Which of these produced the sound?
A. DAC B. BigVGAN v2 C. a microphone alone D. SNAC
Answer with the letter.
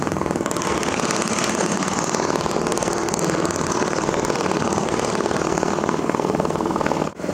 D